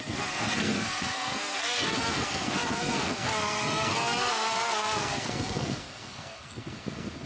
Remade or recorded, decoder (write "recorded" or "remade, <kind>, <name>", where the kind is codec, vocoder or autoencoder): remade, codec, SNAC